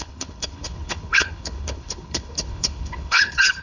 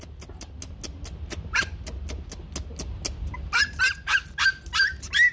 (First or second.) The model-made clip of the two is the first